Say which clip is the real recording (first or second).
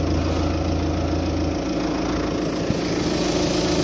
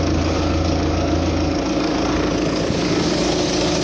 first